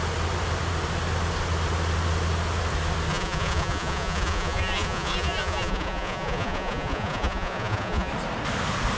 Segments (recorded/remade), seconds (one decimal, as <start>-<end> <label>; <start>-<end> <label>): 0.0-3.1 recorded; 3.1-8.1 remade; 8.1-9.0 recorded